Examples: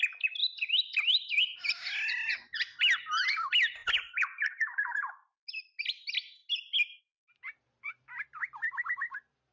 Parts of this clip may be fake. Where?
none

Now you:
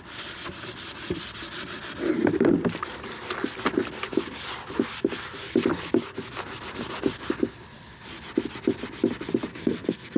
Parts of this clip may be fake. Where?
9.5-10.2

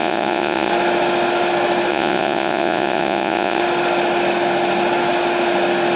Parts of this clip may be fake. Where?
0.0-0.7; 1.9-3.6

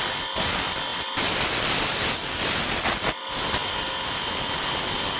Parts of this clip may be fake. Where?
none

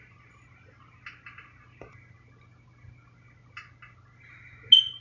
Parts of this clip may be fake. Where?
none